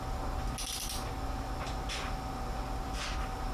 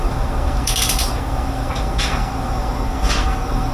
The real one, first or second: first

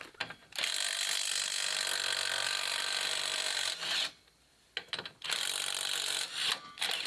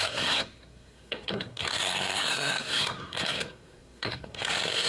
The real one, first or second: first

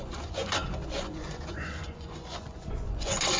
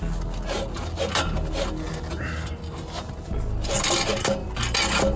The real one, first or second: second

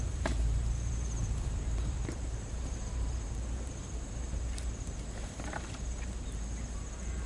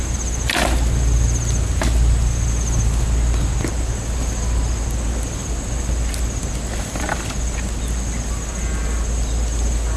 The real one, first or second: second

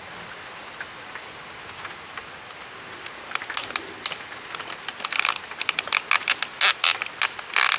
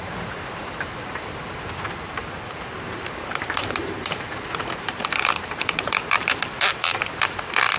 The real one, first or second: first